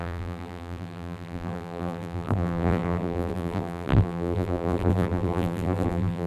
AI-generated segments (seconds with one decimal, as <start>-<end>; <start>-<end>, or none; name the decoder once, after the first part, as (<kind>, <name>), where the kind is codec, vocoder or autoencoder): 0.0-6.3 (vocoder, BigVGAN v2)

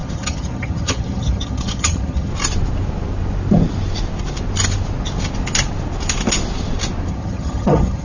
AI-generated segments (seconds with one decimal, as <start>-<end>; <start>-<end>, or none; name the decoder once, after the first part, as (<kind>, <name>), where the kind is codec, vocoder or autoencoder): 0.0-2.3 (vocoder, HiFi-GAN); 7.1-8.0

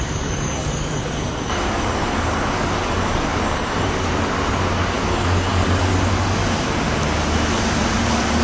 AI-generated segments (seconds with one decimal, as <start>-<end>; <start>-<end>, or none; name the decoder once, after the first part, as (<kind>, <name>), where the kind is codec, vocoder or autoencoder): 0.0-6.4 (codec, DAC); 7.9-8.4